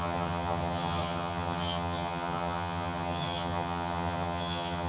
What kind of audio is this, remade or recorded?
remade